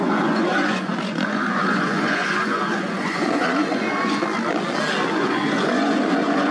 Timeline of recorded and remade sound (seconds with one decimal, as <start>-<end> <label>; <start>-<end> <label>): 0.0-4.2 remade; 4.2-5.1 recorded; 5.1-6.5 remade